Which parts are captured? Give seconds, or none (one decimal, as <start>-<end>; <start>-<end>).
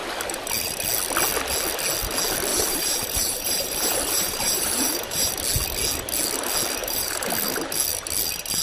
0.0-2.5; 5.3-6.8; 7.3-8.6